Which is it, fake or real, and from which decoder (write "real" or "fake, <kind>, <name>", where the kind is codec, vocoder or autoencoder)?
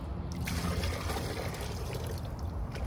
real